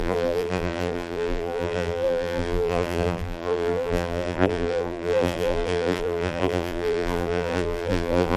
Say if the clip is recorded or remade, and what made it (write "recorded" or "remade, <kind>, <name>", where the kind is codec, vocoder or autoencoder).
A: remade, vocoder, BigVGAN v2